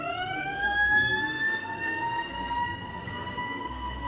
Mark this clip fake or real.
fake